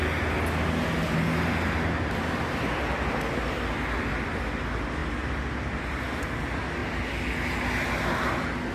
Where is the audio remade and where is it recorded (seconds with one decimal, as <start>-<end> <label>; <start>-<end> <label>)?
0.0-8.7 recorded